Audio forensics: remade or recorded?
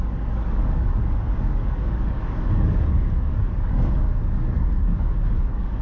remade